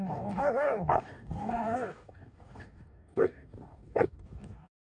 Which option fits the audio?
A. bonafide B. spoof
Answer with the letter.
B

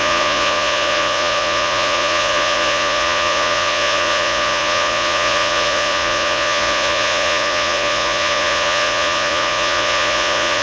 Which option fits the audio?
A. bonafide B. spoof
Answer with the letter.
B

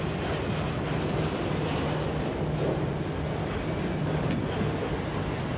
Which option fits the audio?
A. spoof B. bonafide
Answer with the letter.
B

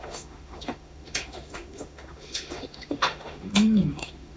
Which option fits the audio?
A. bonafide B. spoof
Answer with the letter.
B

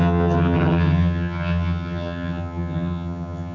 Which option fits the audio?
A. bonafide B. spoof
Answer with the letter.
B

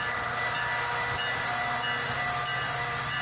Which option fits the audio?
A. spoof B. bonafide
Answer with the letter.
B